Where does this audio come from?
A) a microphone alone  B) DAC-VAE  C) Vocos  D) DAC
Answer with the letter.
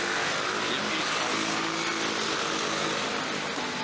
A